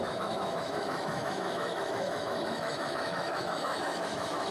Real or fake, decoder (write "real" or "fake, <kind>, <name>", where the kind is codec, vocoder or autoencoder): fake, autoencoder, DAC-VAE